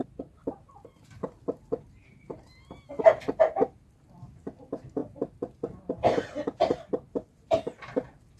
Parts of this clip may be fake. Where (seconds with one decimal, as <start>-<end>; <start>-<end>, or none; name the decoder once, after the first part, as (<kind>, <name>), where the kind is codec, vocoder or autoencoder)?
none